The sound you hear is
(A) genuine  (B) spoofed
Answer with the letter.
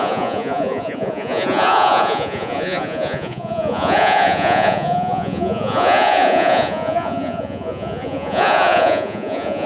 B